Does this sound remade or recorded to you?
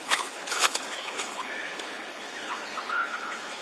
remade